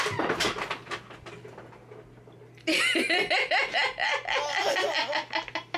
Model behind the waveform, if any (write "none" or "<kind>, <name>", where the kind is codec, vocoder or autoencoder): none